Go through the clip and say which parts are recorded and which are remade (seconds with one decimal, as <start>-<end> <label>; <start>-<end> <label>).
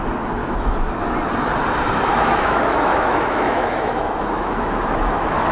0.0-0.4 recorded; 0.4-0.9 remade; 0.9-2.1 recorded; 2.1-5.5 remade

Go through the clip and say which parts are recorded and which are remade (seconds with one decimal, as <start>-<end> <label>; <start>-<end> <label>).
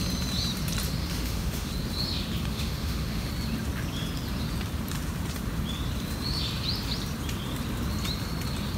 0.0-1.1 recorded; 1.1-1.7 remade; 1.7-2.5 recorded; 2.5-3.3 remade; 3.3-8.8 recorded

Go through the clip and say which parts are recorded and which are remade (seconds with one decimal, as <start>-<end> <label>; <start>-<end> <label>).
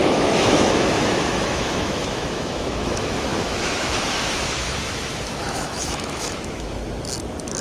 0.0-6.8 remade; 6.8-7.6 recorded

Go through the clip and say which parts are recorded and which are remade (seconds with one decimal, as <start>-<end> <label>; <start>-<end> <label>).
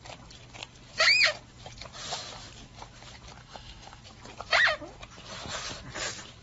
0.0-3.4 recorded; 3.4-4.0 remade; 4.0-6.4 recorded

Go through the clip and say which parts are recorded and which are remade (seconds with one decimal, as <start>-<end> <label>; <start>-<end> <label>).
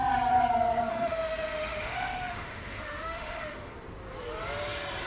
0.0-0.9 recorded; 0.9-3.7 remade; 3.7-5.1 recorded